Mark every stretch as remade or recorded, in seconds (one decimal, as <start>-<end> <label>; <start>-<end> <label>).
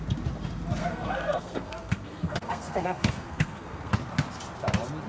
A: 0.0-0.8 recorded; 0.8-3.9 remade; 3.9-5.1 recorded